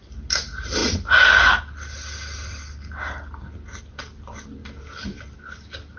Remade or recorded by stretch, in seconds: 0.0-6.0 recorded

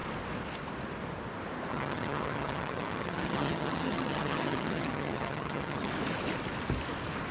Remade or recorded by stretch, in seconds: 0.0-1.7 recorded; 1.7-5.9 remade; 5.9-7.3 recorded